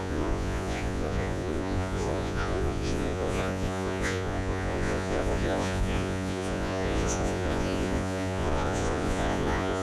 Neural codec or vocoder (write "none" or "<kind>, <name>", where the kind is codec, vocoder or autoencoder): vocoder, Vocos